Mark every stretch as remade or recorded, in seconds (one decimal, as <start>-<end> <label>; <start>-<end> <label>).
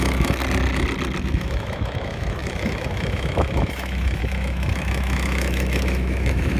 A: 0.0-0.4 remade; 0.4-1.2 recorded; 1.2-6.6 remade